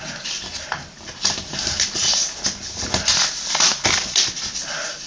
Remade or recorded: recorded